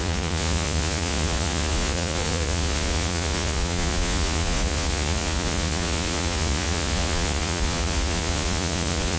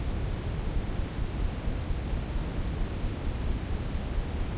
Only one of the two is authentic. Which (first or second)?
second